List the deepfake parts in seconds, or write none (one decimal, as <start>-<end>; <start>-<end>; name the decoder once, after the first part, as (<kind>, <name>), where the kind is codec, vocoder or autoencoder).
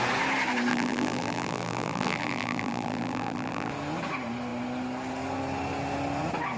0.7-3.7 (vocoder, BigVGAN v2)